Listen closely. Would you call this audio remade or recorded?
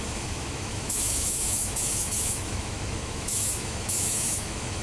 remade